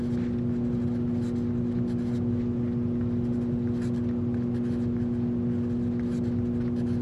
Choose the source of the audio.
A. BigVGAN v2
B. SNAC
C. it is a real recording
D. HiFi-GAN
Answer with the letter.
C